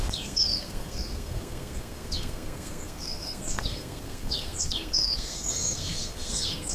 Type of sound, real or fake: fake